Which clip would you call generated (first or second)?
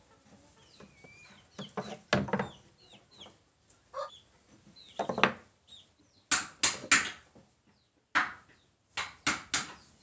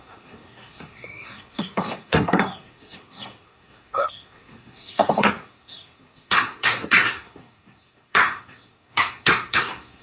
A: second